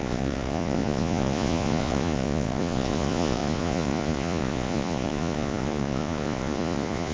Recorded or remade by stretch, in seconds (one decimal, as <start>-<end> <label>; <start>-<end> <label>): 0.0-7.1 remade